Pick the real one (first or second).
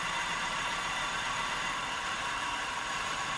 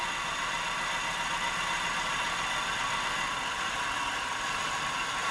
second